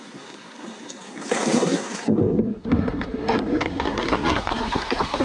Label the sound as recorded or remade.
remade